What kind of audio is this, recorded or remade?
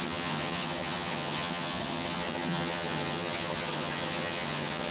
remade